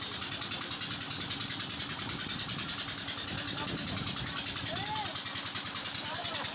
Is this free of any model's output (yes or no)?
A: yes